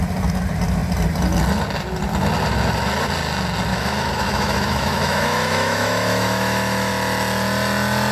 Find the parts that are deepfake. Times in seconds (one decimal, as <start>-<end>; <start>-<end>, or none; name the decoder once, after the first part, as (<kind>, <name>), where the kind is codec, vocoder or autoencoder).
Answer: 3.7-6.9 (autoencoder, DAC-VAE)